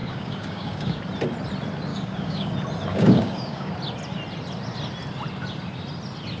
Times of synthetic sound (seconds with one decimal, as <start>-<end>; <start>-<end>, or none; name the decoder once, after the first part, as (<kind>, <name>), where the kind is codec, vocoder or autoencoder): 0.0-1.0 (codec, DAC); 1.9-2.5; 2.9-3.7